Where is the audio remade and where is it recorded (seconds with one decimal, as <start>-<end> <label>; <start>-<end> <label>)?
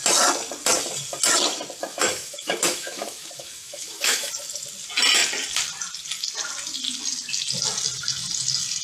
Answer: 0.0-1.9 recorded; 1.9-4.3 remade; 4.3-8.8 recorded